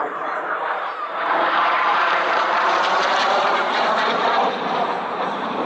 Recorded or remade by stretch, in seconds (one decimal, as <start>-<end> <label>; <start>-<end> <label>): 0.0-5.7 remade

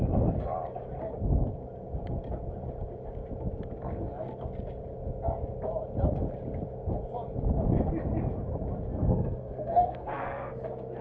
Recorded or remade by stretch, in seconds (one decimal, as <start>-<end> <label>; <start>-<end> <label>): 0.0-8.9 recorded; 8.9-10.5 remade; 10.5-11.0 recorded

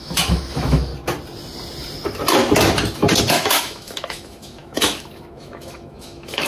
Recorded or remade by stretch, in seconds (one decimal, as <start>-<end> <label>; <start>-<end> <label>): 0.0-0.9 remade; 0.9-3.2 recorded; 3.2-6.5 remade

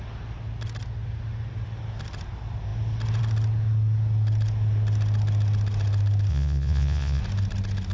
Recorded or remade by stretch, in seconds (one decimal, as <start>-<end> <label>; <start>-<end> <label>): 0.0-6.3 recorded; 6.3-7.2 remade; 7.2-7.9 recorded

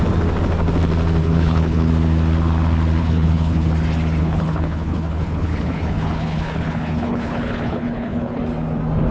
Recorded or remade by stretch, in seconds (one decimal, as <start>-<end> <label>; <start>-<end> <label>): 0.0-1.2 recorded; 1.2-1.9 remade; 1.9-3.0 recorded; 3.0-3.7 remade; 3.7-4.2 recorded; 4.2-8.4 remade; 8.4-9.1 recorded